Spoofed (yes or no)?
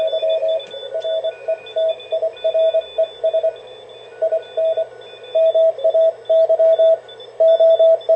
no